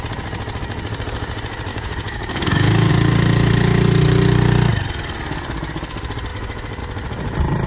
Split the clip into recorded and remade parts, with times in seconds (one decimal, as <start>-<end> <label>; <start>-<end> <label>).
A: 0.0-1.7 recorded; 1.7-2.9 remade; 2.9-7.7 recorded